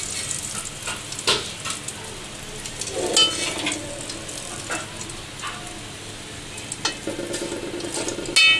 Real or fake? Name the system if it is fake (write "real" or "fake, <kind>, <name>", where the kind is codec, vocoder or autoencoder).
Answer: real